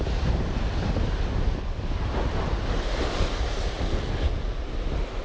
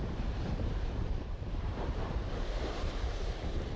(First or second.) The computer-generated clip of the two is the second